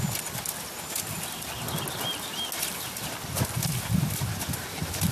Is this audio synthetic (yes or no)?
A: no